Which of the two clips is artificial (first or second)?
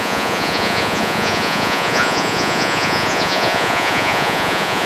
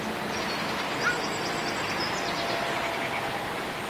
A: first